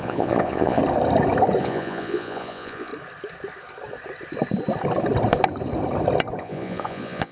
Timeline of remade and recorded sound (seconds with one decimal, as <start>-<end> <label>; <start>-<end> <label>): 0.0-0.8 remade; 0.8-1.6 recorded; 1.6-2.9 remade; 2.9-6.4 recorded; 6.4-7.3 remade